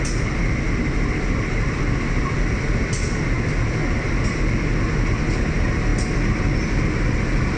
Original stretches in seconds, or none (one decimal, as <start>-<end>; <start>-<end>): 0.0-7.6